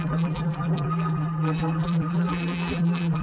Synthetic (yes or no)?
yes